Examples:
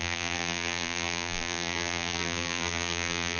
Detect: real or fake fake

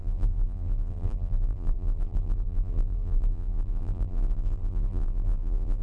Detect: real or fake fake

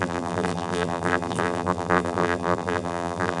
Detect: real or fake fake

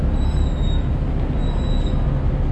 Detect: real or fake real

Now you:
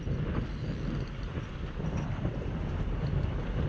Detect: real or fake real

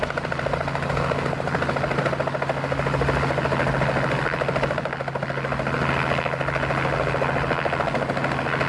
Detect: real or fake real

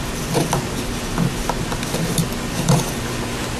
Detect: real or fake real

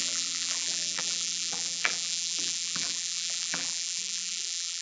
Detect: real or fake fake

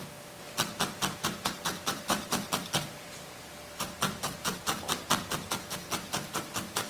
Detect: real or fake real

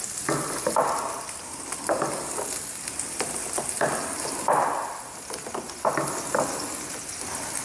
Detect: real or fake real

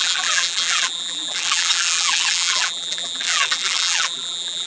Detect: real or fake fake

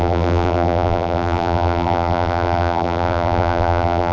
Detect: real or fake fake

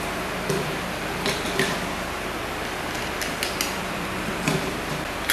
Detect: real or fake fake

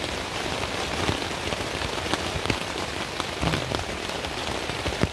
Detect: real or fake fake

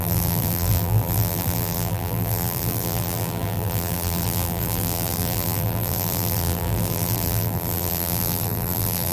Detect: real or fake fake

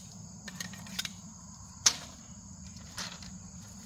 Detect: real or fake fake